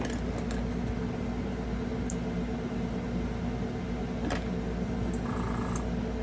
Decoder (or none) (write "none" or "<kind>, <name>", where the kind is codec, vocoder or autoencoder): none